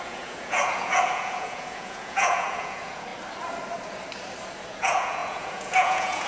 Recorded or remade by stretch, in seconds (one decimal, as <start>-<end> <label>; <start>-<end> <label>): 0.0-3.1 remade; 3.1-4.7 recorded; 4.7-6.3 remade